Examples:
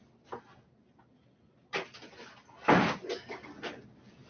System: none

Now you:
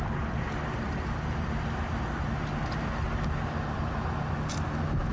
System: none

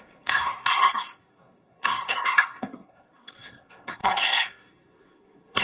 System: codec, SNAC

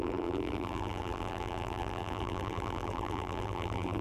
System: vocoder, BigVGAN v2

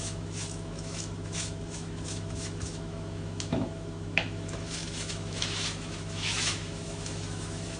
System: autoencoder, DAC-VAE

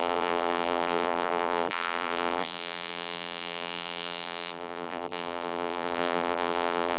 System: vocoder, BigVGAN v2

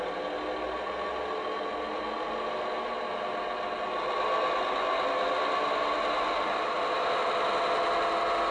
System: none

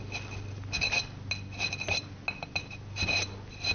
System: none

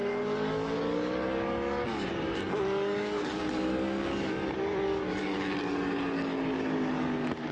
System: codec, DAC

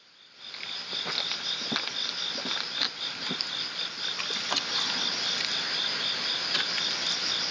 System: none